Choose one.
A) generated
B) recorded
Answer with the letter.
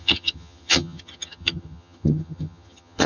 A